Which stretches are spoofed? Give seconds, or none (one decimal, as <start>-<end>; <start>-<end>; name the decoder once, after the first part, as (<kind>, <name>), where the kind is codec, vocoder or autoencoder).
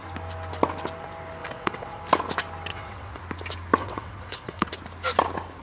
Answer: 1.4-2.0 (vocoder, WaveNeXt); 2.7-3.2; 3.8-4.7